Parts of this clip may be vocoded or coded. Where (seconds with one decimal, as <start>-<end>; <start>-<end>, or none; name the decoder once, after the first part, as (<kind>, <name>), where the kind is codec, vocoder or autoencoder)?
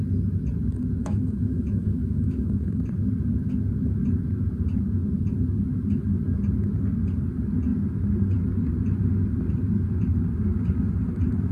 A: 1.0-2.8 (autoencoder, DAC-VAE)